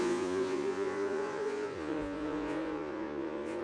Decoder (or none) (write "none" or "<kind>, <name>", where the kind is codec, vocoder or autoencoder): vocoder, Vocos